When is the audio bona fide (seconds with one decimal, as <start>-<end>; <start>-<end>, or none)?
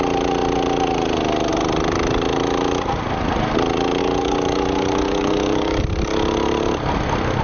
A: 0.0-4.0; 5.8-7.4